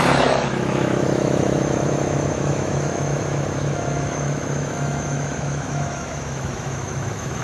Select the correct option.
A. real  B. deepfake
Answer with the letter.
B